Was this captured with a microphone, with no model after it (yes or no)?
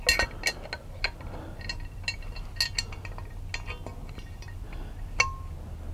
yes